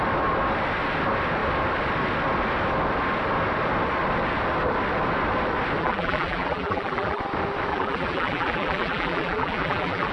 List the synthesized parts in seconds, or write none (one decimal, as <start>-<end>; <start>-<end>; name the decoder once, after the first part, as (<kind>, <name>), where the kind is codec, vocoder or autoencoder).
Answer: 5.8-7.2 (vocoder, BigVGAN v2); 7.7-10.1